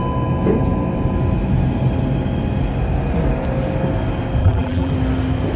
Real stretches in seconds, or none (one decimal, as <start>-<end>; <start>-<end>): 0.0-4.4; 4.9-5.6